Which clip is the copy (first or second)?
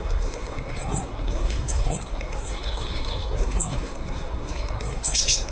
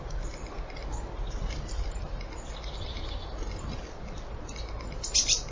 first